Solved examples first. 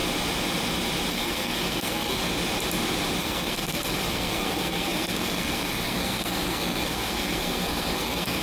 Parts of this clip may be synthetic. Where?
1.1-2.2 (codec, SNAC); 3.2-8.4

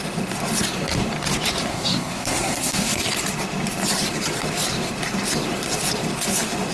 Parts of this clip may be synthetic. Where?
1.7-2.9 (codec, SNAC)

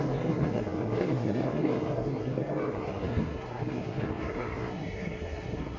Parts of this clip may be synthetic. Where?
0.0-5.8 (codec, SNAC)

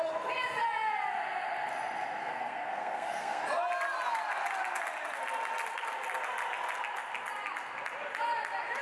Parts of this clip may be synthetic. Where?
2.2-3.4 (codec, SNAC)

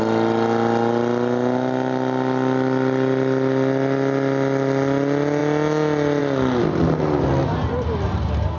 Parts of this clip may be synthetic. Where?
none

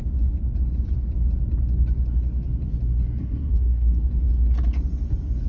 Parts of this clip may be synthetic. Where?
3.2-4.0 (codec, SNAC)

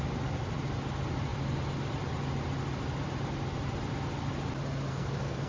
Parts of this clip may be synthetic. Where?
4.9-5.5 (codec, SNAC)

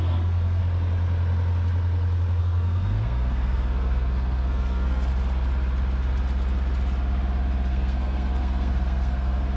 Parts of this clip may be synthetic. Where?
0.0-0.6 (codec, SNAC); 2.4-5.1; 7.7-9.6